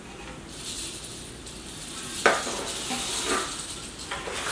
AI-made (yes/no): no